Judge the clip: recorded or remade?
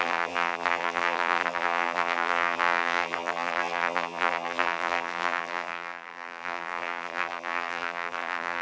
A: remade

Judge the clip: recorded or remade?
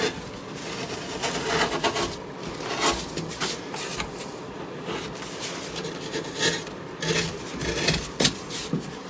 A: recorded